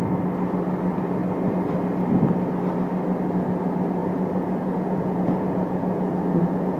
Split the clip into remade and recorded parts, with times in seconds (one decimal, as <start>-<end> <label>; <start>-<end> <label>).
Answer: 0.0-4.0 recorded; 4.0-6.8 remade